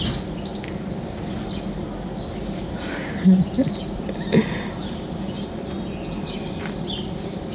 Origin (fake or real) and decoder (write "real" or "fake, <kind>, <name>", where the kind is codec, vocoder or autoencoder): real